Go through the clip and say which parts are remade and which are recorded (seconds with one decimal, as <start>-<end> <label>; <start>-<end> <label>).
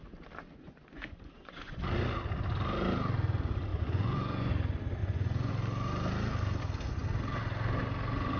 0.0-0.5 recorded; 0.5-1.8 remade; 1.8-3.7 recorded; 3.7-4.5 remade; 4.5-5.0 recorded; 5.0-5.5 remade; 5.5-8.4 recorded